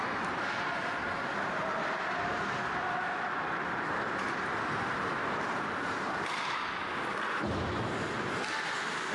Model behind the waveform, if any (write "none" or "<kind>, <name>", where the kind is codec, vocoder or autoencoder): none